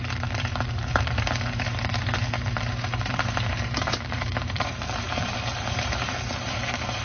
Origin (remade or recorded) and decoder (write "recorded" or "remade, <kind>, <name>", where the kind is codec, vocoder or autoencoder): remade, vocoder, BigVGAN v2